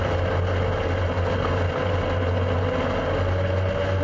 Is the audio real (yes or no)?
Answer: yes